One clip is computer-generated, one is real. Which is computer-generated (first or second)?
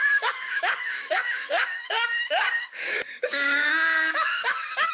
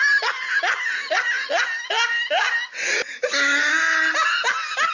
first